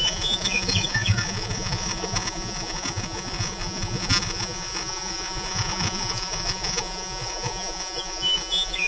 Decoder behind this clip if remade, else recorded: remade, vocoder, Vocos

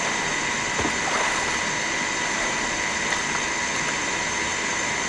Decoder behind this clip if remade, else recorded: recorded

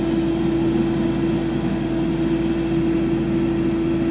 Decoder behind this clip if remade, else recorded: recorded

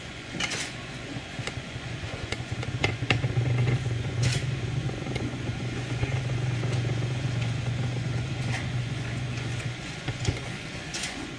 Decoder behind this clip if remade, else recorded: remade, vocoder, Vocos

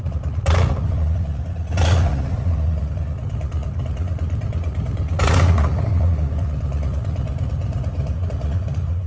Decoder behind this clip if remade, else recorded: remade, vocoder, Vocos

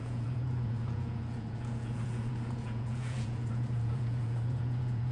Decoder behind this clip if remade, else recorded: remade, vocoder, Vocos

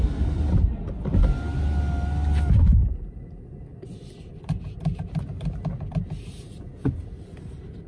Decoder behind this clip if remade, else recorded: recorded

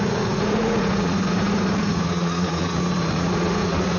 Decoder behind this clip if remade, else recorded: remade, vocoder, Vocos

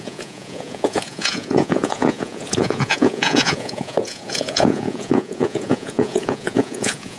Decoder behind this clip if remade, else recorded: remade, vocoder, Vocos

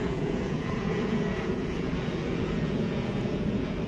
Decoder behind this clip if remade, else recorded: remade, vocoder, Vocos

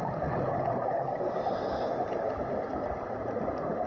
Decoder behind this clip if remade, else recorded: recorded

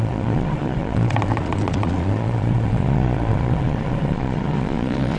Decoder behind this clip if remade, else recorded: remade, vocoder, Vocos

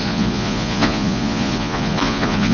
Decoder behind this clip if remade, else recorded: remade, vocoder, Vocos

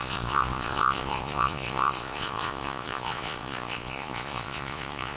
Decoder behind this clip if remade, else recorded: remade, vocoder, Vocos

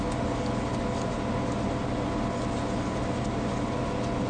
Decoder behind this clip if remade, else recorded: recorded